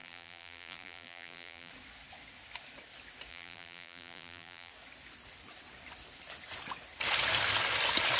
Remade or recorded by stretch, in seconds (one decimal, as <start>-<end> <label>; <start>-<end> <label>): 0.0-1.7 remade; 1.7-3.3 recorded; 3.3-4.7 remade; 4.7-8.2 recorded

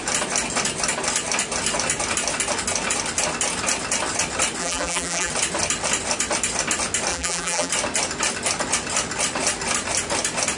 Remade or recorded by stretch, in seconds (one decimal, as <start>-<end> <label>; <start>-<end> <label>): 0.0-4.6 recorded; 4.6-5.3 remade; 5.3-7.1 recorded; 7.1-7.7 remade; 7.7-10.6 recorded